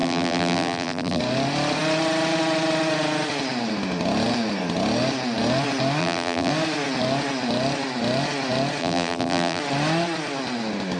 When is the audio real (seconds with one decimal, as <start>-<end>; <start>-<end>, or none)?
1.2-6.0; 6.5-8.8; 9.6-11.0